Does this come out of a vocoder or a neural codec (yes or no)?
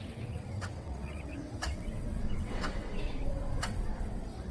yes